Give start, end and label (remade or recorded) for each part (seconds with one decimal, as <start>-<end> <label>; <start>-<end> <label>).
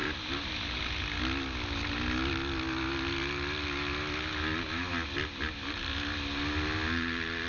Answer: 0.0-7.5 recorded